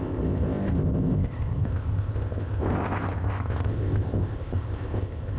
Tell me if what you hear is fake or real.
fake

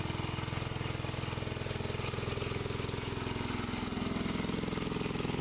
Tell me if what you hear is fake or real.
real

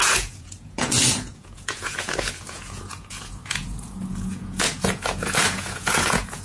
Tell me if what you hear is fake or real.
fake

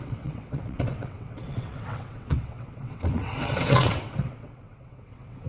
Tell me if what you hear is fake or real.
fake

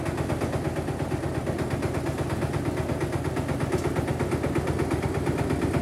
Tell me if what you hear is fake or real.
real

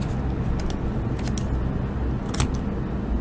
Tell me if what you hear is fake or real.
real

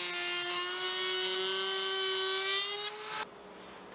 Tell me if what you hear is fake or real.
real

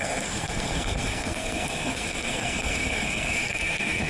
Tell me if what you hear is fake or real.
fake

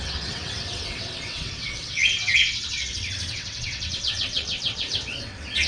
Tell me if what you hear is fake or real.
fake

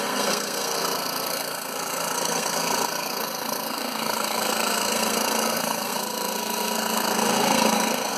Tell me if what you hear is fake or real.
fake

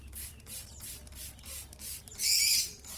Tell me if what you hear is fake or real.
fake